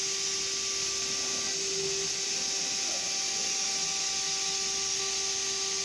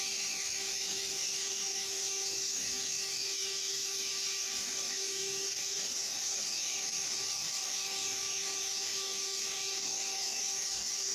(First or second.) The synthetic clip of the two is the second